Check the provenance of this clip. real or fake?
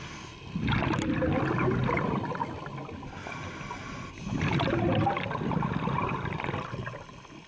real